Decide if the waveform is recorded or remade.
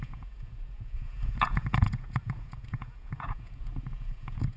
remade